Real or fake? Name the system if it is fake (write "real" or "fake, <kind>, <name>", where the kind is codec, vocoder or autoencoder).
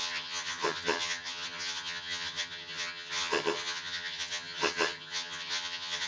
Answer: fake, vocoder, HiFi-GAN